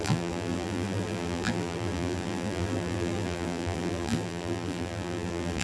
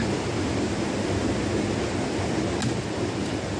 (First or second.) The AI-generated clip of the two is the first